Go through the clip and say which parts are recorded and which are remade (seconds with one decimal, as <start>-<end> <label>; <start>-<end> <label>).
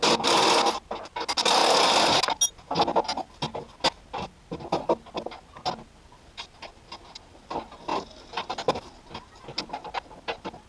0.0-10.7 recorded